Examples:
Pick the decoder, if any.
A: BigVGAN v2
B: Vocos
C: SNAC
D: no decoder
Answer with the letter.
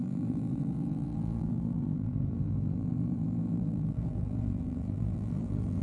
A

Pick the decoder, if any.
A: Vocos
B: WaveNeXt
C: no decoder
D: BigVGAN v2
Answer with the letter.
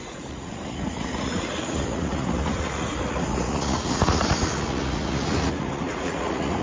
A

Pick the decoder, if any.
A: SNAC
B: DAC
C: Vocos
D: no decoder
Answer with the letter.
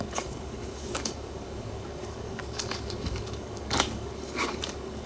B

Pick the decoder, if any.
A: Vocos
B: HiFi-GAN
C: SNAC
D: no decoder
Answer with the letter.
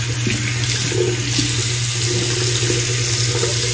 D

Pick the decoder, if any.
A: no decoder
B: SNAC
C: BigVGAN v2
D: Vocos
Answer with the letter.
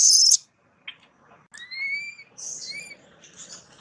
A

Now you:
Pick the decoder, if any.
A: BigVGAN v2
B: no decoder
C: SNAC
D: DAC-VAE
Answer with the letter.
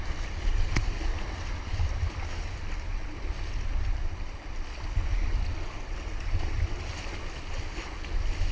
B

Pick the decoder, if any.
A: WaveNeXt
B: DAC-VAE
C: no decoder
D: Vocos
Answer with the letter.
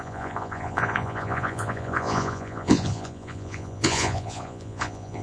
D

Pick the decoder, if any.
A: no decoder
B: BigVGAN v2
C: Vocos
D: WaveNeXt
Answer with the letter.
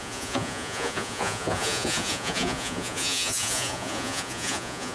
C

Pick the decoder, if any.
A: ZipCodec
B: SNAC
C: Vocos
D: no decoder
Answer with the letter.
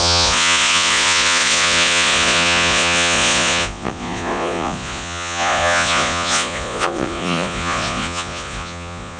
C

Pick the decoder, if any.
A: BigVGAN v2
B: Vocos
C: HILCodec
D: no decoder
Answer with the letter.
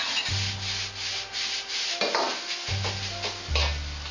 D